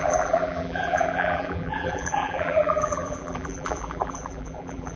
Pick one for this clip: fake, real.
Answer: fake